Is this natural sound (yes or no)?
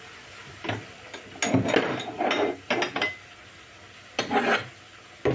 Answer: yes